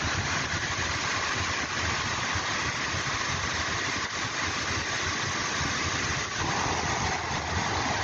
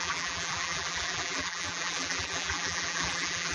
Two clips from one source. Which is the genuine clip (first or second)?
first